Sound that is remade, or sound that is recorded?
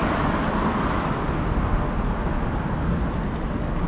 recorded